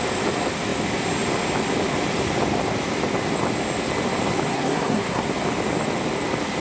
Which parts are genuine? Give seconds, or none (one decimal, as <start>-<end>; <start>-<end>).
0.0-4.5; 5.3-6.6